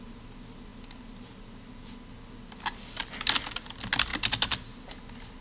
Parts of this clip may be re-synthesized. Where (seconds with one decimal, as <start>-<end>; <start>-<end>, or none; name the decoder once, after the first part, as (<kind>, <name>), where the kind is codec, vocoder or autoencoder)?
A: none